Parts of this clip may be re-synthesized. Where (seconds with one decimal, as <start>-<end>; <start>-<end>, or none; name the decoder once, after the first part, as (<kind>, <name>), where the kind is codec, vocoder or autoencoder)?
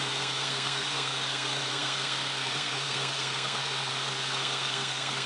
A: 0.0-5.3 (codec, SNAC)